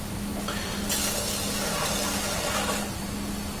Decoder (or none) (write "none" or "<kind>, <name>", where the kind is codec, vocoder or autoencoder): none